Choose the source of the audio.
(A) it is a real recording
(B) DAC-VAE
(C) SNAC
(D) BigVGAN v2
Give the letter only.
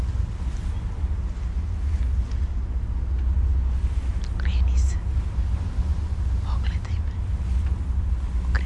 A